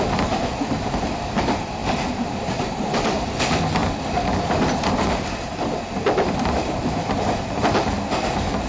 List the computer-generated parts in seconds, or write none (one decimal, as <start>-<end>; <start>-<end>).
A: 1.8-3.4; 3.8-5.6